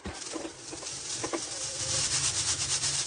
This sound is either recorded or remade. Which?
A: remade